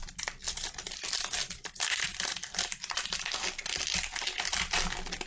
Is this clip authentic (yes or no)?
yes